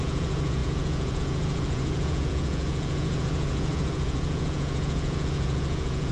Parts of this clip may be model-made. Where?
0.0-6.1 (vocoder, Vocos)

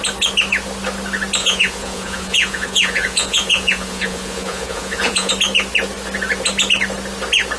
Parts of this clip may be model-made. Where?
1.4-5.3 (vocoder, Vocos)

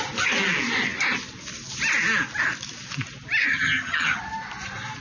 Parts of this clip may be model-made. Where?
3.4-4.2 (vocoder, HiFi-GAN)

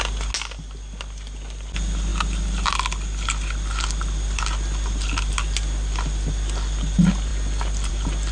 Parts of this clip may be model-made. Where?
none